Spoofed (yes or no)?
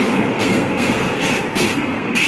yes